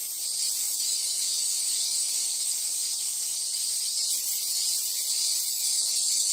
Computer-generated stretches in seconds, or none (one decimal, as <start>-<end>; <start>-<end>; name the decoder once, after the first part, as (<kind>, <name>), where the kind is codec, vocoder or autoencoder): 0.6-3.4 (codec, DAC); 5.5-6.3